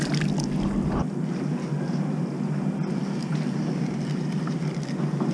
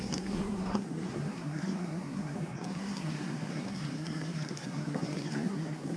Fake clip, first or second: second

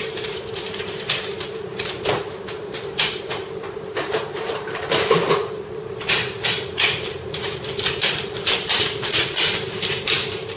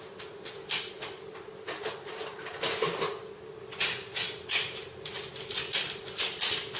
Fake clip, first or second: first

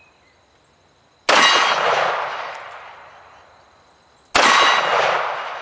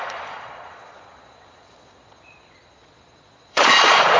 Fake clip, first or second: second